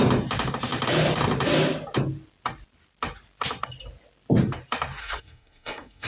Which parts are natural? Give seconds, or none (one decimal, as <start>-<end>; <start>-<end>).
0.0-5.0